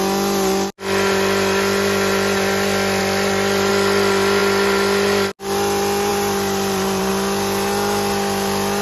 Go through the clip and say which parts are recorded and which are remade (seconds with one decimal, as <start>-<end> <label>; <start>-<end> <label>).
0.0-3.0 recorded; 3.0-3.7 remade; 3.7-6.1 recorded; 6.1-7.1 remade; 7.1-8.8 recorded